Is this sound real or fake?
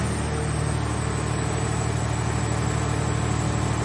real